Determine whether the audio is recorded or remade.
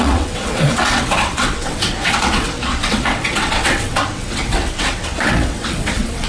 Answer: remade